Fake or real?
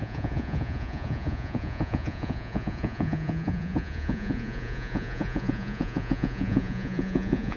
fake